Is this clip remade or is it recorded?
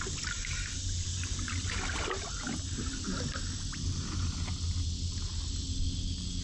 recorded